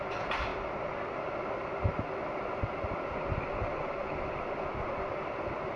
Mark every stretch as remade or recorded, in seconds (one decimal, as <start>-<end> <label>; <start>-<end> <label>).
0.0-5.8 recorded